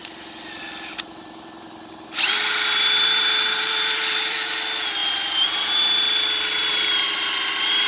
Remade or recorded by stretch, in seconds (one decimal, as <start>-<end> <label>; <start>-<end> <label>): 0.0-4.5 remade; 4.5-5.0 recorded; 5.0-5.6 remade; 5.6-6.6 recorded; 6.6-7.1 remade; 7.1-7.9 recorded